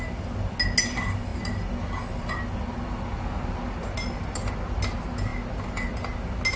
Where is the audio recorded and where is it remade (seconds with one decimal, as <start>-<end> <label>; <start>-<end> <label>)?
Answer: 0.0-6.6 recorded